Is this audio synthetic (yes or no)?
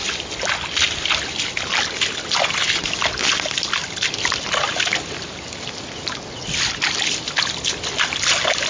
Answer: no